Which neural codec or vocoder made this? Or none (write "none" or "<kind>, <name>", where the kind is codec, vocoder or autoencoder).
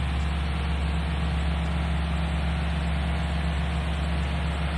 none